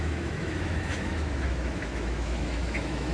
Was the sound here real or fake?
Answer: fake